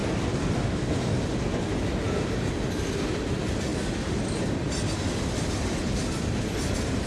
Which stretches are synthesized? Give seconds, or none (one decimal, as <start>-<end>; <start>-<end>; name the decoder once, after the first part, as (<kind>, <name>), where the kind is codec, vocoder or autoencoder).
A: none